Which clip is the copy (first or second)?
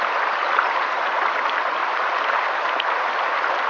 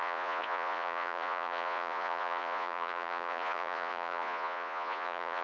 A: second